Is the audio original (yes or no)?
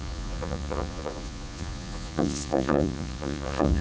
no